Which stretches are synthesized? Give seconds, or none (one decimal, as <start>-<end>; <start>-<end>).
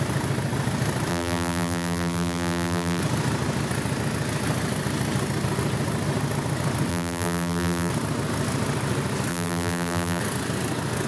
1.1-3.0; 6.9-7.9; 9.3-10.2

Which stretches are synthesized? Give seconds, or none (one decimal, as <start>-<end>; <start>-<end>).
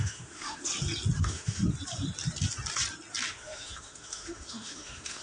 0.0-0.7; 1.2-1.6; 3.3-5.2